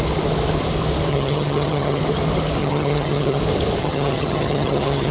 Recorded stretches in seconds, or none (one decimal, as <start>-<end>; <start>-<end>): 0.0-1.1; 2.0-2.6; 3.4-3.8